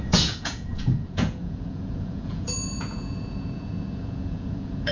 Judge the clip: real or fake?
fake